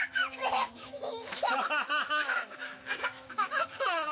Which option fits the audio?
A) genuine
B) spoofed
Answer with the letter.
B